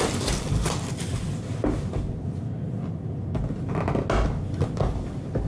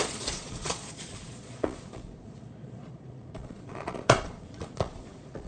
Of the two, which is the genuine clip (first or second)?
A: first